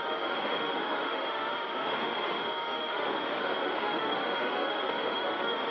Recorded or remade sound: remade